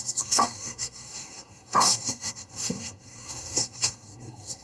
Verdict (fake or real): fake